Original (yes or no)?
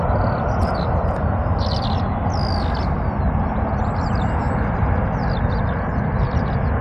yes